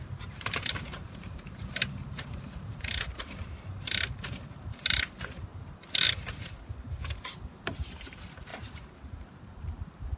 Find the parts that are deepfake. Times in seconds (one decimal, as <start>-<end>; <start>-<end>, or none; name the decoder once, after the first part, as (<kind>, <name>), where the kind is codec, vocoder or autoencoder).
0.0-5.5 (vocoder, BigVGAN v2); 6.3-10.2